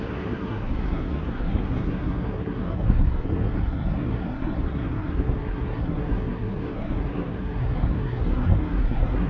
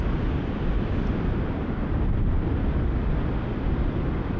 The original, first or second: second